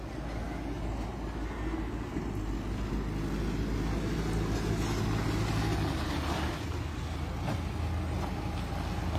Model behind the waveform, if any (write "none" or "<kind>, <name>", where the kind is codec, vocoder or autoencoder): none